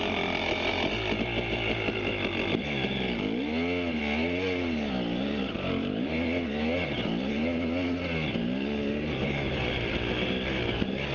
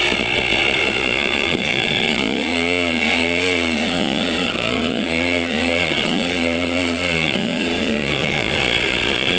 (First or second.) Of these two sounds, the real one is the first